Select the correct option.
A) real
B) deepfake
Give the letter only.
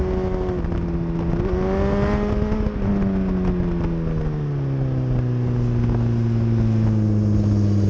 A